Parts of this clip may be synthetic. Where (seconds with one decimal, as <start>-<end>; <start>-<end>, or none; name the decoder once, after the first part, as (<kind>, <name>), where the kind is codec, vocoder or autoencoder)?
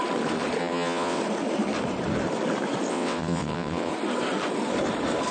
0.6-1.2 (vocoder, WaveNeXt); 2.9-3.9